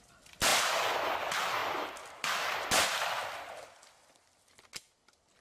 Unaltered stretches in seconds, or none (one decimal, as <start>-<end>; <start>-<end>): 0.0-1.6; 2.7-3.2; 4.2-5.4